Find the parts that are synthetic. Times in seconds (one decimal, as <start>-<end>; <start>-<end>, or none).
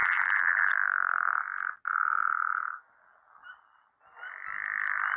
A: 0.0-0.7